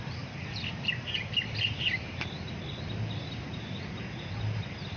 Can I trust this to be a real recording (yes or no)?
yes